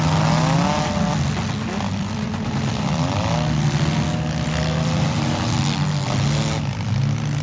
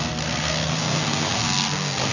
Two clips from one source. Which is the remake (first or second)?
second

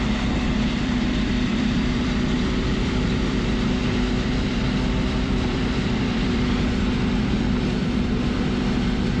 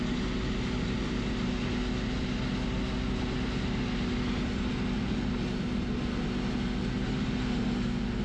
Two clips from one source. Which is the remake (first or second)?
first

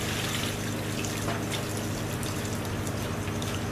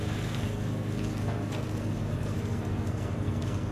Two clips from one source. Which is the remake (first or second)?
second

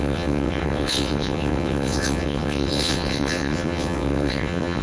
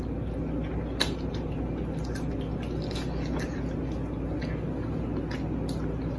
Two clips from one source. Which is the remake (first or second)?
first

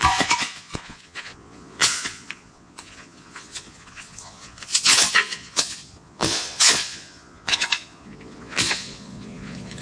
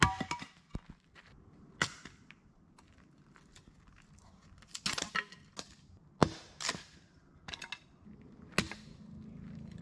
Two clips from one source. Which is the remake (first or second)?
first